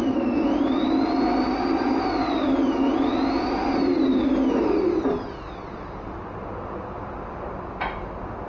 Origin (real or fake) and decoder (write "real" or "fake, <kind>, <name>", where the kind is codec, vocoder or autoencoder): real